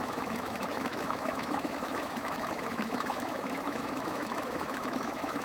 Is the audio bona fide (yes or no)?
no